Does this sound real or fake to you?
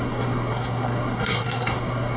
fake